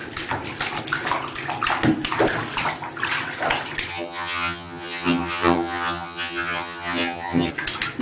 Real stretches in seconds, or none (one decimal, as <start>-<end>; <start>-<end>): 0.0-3.9; 7.5-8.0